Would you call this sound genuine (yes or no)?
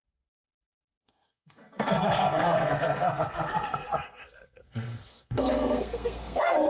no